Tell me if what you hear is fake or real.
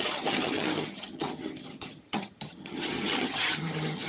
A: fake